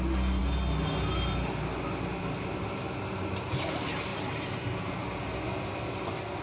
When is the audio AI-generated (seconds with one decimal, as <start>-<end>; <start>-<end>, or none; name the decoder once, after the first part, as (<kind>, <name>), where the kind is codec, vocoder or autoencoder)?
4.1-4.7 (vocoder, BigVGAN v2)